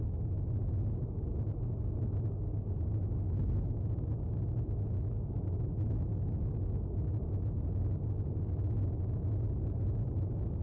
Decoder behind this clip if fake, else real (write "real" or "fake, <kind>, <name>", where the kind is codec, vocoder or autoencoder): real